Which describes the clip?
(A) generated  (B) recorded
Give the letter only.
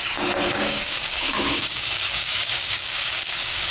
A